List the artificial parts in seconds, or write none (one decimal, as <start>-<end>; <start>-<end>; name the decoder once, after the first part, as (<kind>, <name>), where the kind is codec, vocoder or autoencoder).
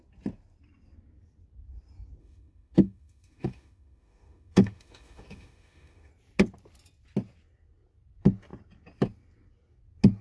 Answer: 2.2-6.1 (autoencoder, DAC-VAE)